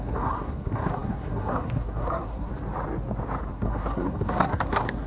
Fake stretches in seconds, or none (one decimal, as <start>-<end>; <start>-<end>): 0.0-2.5; 3.5-5.1